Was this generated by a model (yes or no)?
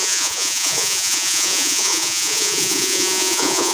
yes